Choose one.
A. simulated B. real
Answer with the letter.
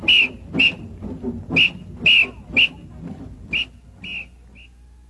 B